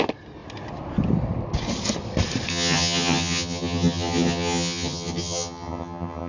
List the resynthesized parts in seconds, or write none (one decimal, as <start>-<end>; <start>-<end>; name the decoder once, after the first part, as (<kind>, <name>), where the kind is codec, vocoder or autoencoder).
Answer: 2.5-6.3 (vocoder, HiFi-GAN)